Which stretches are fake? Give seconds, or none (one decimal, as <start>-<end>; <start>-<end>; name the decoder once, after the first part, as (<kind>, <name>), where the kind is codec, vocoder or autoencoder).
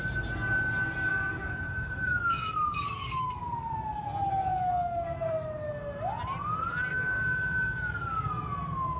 1.1-3.6 (codec, DAC); 4.5-5.3; 6.9-8.3